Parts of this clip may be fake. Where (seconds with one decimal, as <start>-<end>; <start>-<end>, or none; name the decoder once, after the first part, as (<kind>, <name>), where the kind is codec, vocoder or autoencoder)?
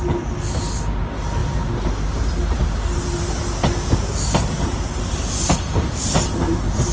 none